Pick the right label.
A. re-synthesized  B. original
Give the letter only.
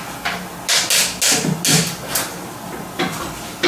B